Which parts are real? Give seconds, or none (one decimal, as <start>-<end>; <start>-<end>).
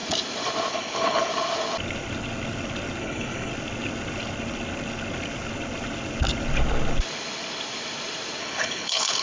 0.0-0.7; 1.3-3.0; 3.5-8.4